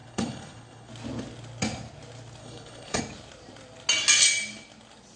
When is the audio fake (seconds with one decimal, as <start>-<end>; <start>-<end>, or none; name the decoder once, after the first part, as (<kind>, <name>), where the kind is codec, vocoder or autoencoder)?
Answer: 0.0-0.9 (codec, HILCodec); 2.4-3.0

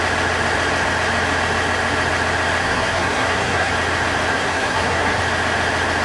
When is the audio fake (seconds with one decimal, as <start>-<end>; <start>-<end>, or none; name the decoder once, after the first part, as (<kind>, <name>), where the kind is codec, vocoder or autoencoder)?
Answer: 2.6-3.7 (codec, SNAC); 4.3-5.2